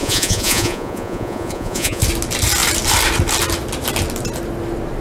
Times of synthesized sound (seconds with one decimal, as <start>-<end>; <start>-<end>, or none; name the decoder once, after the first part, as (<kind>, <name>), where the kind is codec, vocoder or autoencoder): 0.0-2.0 (vocoder, Vocos)